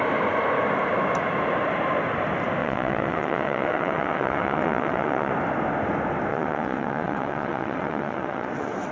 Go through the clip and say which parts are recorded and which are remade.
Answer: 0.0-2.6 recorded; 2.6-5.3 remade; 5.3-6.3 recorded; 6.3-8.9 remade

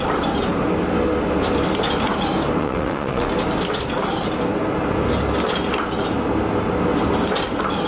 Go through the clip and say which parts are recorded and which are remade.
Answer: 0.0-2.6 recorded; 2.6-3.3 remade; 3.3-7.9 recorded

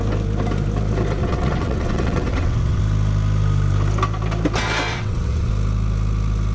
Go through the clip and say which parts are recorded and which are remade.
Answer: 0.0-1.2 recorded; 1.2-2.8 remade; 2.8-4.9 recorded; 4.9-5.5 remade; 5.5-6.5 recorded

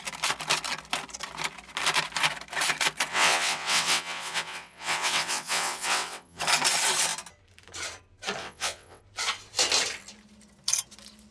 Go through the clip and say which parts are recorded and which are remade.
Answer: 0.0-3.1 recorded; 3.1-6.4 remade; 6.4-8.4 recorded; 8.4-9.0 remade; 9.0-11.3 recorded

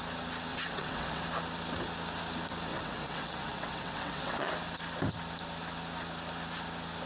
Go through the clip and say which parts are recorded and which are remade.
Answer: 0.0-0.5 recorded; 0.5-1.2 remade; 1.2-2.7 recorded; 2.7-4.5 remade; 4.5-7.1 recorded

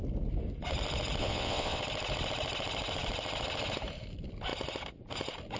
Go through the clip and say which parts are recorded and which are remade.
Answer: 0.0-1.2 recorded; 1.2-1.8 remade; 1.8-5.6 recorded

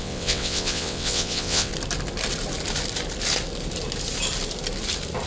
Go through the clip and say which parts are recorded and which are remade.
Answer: 0.0-1.7 remade; 1.7-5.3 recorded

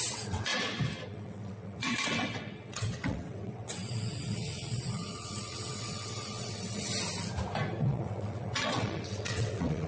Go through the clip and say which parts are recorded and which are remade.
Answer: 0.0-0.5 remade; 0.5-1.1 recorded; 1.1-6.9 remade; 6.9-7.8 recorded; 7.8-9.9 remade